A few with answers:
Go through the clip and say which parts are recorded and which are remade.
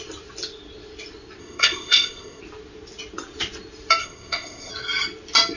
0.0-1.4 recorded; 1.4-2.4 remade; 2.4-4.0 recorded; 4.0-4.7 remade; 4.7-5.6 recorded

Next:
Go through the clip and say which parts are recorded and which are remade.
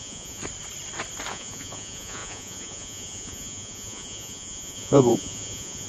0.0-0.4 remade; 0.4-1.3 recorded; 1.3-5.9 remade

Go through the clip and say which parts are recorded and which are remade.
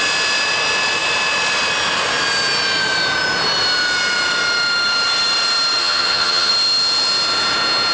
0.0-5.8 recorded; 5.8-6.5 remade; 6.5-7.9 recorded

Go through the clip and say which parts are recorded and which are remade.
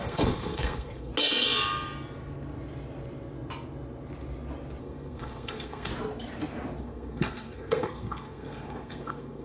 0.0-1.1 remade; 1.1-4.8 recorded; 4.8-5.9 remade; 5.9-6.8 recorded; 6.8-9.4 remade